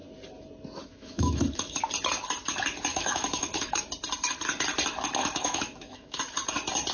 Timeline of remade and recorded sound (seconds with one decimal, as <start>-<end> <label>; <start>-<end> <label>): 0.0-0.9 recorded; 0.9-1.8 remade; 1.8-2.9 recorded; 2.9-3.8 remade; 3.8-5.2 recorded; 5.2-6.2 remade; 6.2-6.9 recorded